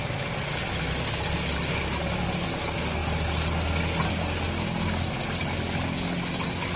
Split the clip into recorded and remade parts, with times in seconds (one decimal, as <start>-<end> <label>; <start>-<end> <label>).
0.0-6.8 recorded